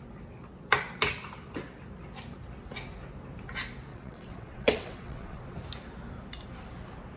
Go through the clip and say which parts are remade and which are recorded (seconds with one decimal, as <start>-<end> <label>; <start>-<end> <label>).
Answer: 0.0-3.9 recorded; 3.9-5.4 remade; 5.4-7.2 recorded